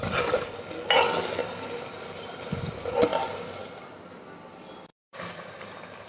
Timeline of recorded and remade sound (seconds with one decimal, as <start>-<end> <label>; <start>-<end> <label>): 0.0-1.4 recorded; 1.4-2.3 remade; 2.3-4.9 recorded; 4.9-6.1 remade